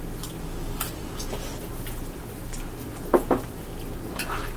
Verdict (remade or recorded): recorded